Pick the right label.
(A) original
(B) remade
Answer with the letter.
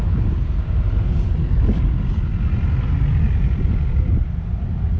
A